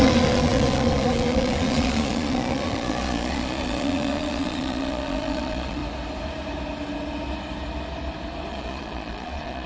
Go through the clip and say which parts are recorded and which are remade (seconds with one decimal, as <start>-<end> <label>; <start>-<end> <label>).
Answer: 0.0-5.8 remade; 5.8-8.5 recorded; 8.5-9.7 remade